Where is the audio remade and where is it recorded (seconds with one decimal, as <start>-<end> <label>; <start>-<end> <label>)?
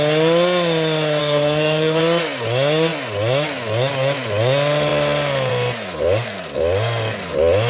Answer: 0.0-1.2 recorded; 1.2-2.0 remade; 2.0-7.7 recorded